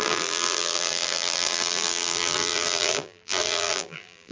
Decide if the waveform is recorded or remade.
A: remade